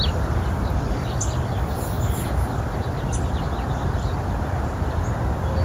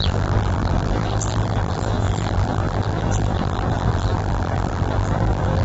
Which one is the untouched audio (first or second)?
first